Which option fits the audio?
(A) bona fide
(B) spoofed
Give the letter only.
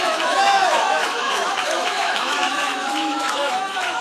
B